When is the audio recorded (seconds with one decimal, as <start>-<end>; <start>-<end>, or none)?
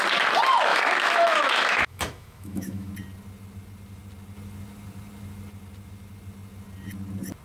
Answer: 0.0-0.7; 2.9-7.4